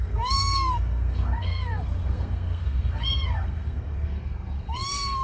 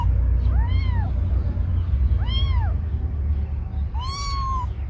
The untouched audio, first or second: second